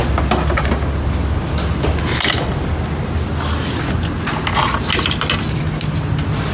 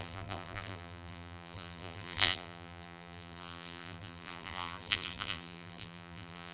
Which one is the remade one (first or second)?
second